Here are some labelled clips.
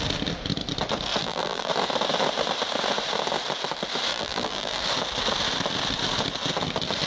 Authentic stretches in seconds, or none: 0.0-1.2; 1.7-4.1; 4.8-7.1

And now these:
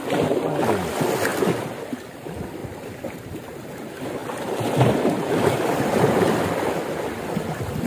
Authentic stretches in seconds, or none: 1.3-1.9; 2.6-3.7; 4.2-5.4

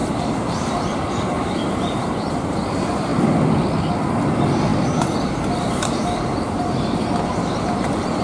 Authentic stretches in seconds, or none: 3.1-4.3

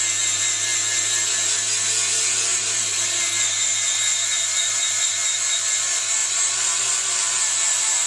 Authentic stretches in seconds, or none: 0.0-2.5; 3.2-4.1; 5.7-6.2

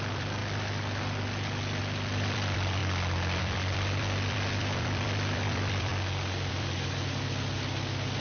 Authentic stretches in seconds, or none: 0.4-1.8; 2.8-3.4; 5.9-6.5

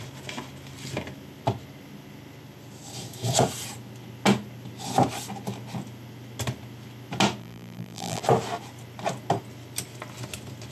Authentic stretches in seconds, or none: 0.0-7.4; 8.2-10.7